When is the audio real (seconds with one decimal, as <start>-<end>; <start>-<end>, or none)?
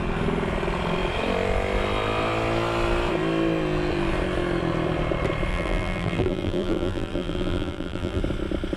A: 0.0-5.5; 8.2-8.8